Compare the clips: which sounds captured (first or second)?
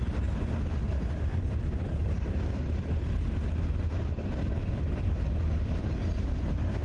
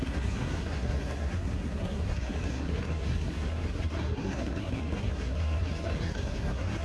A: first